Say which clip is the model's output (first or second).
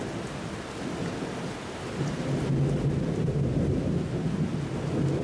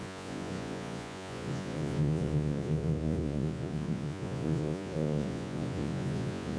second